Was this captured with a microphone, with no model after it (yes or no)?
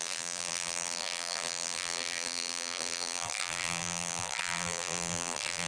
no